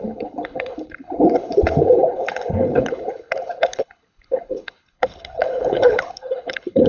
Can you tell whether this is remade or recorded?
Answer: remade